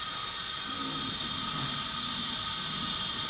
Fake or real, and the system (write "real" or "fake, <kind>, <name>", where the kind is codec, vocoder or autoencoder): real